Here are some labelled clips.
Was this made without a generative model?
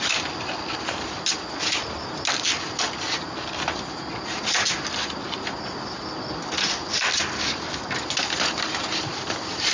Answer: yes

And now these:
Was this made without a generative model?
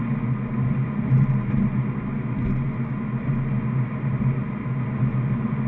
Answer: yes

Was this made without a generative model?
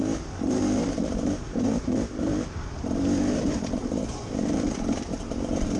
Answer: no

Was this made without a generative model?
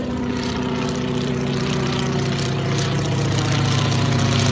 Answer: no